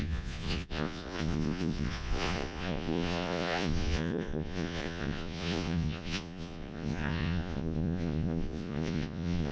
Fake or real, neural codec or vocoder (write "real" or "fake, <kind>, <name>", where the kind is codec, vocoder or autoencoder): fake, vocoder, Vocos